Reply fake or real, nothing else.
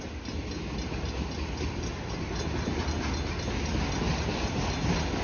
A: real